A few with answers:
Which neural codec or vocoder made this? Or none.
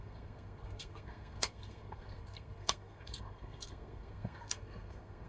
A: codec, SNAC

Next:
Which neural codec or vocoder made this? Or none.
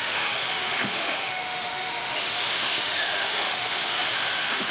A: autoencoder, DAC-VAE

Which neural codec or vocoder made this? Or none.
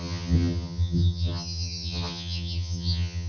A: vocoder, HiFi-GAN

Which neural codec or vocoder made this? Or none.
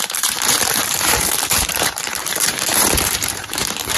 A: vocoder, BigVGAN v2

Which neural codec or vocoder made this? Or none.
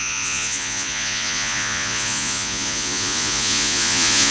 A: vocoder, Vocos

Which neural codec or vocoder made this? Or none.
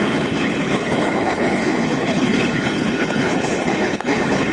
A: codec, HILCodec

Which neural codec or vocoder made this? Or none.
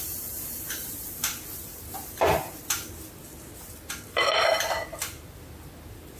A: none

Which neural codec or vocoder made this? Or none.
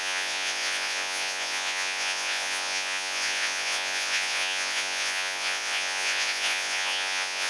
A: vocoder, Vocos